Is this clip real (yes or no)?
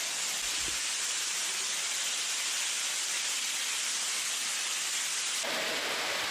yes